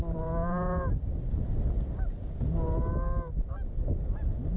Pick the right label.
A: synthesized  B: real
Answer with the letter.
B